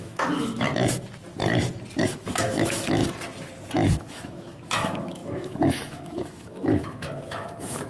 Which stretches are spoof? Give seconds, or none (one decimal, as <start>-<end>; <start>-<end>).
0.0-0.7; 2.0-3.0; 4.0-7.9